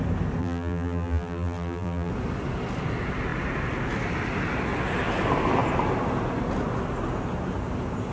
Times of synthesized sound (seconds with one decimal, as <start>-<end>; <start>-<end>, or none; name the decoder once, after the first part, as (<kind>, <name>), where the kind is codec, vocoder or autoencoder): 0.4-2.1 (vocoder, BigVGAN v2)